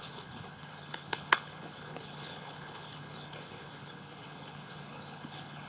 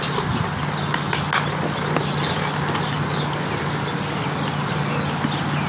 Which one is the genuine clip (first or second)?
second